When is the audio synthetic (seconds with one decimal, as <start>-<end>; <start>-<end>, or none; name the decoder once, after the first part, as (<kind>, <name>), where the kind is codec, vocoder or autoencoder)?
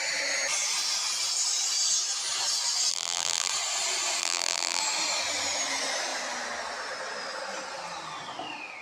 2.9-3.5 (vocoder, BigVGAN v2); 4.2-4.8